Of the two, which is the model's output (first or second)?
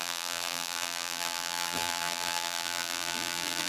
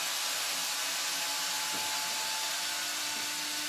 first